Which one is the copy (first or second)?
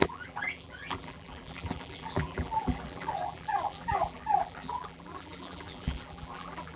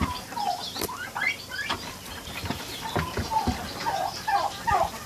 first